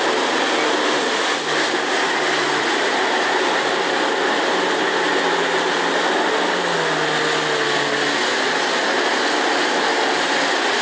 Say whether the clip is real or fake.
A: real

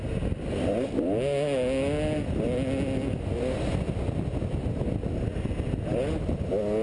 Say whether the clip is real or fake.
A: real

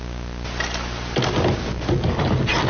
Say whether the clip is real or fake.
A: real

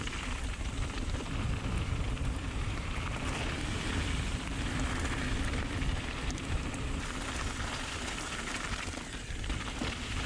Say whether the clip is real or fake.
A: fake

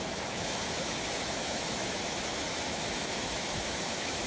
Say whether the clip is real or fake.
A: fake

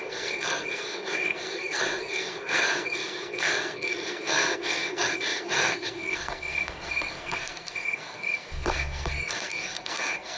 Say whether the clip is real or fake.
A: fake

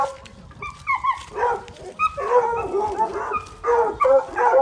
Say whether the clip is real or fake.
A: real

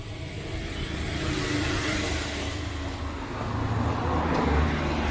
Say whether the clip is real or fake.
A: real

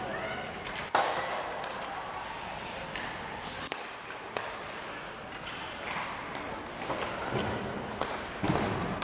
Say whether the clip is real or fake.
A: real